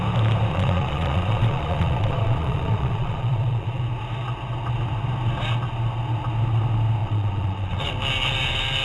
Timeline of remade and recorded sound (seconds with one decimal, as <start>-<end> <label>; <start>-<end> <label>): 0.0-0.5 recorded; 0.5-3.8 remade; 3.8-7.0 recorded; 7.0-7.9 remade; 7.9-8.8 recorded